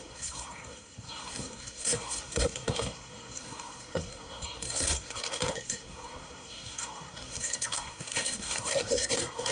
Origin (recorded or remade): remade